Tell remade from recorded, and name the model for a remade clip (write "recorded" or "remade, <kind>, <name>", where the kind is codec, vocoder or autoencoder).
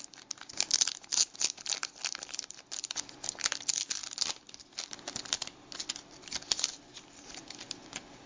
recorded